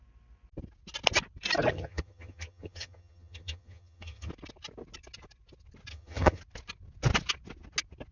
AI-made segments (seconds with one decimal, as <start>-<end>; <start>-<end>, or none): 1.7-4.3; 5.9-6.4